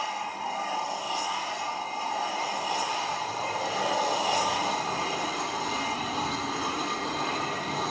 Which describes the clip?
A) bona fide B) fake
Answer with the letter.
A